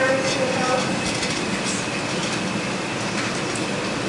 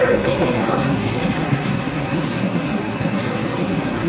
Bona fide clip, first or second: first